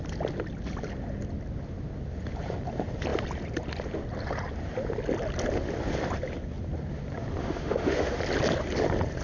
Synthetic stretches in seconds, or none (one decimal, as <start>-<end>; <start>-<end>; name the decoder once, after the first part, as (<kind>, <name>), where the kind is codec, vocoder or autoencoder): 7.4-8.2 (autoencoder, DAC-VAE)